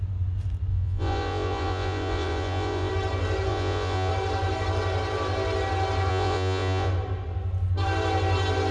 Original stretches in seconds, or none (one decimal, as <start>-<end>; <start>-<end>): 0.0-0.7; 2.9-3.5; 4.1-6.1; 6.9-8.7